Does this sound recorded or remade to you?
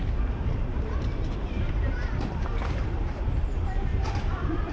remade